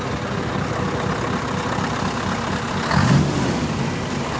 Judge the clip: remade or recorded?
recorded